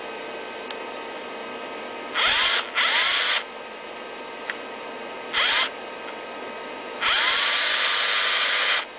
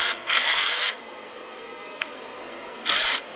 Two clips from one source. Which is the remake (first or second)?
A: second